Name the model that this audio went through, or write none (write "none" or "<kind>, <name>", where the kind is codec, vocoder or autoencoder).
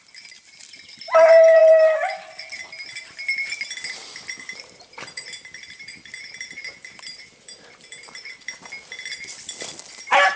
vocoder, BigVGAN v2